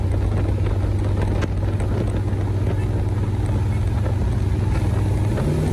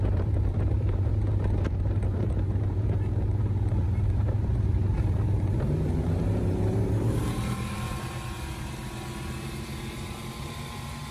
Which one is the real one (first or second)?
first